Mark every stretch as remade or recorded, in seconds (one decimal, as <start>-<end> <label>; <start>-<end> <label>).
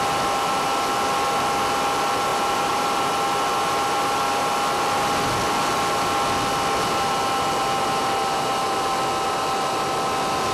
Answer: 0.0-2.3 recorded; 2.3-3.1 remade; 3.1-10.5 recorded